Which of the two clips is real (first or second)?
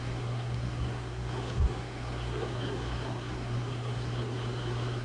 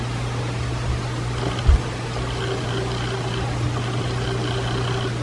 second